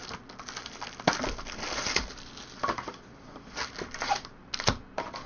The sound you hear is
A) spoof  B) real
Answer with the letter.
B